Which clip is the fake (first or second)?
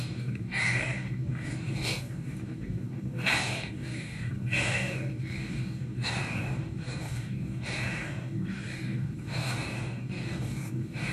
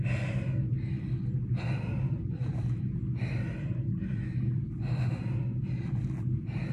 first